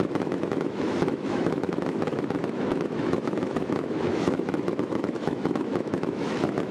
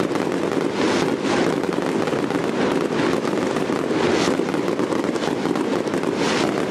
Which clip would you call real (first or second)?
second